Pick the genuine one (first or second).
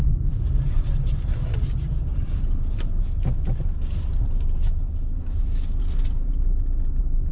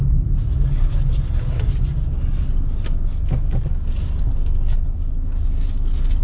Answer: second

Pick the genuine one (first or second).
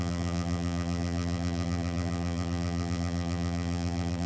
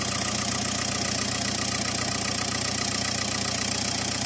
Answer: second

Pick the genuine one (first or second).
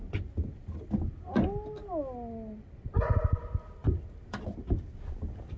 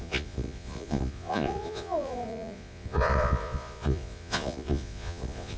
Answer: first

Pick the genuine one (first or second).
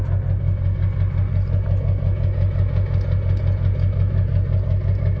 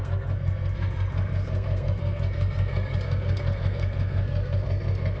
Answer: first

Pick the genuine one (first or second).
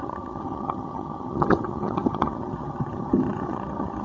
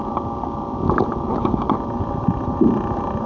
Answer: second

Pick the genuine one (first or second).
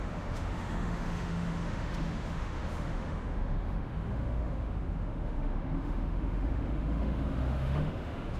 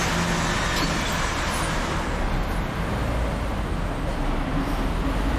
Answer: second